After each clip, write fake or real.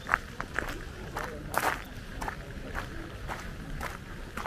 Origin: fake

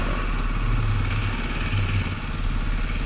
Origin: real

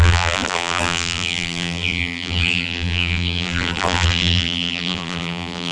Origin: fake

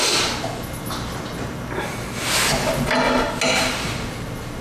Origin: real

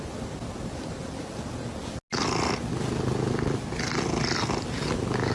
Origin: real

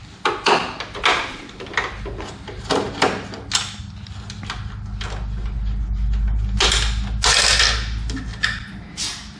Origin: real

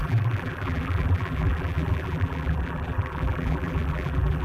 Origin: fake